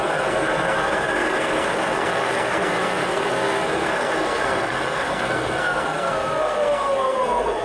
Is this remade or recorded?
remade